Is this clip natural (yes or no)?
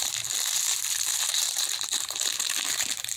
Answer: no